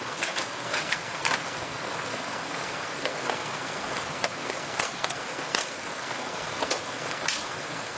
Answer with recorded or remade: remade